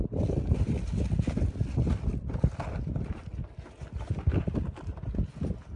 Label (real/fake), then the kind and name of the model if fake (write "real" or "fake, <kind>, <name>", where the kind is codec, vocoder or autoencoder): real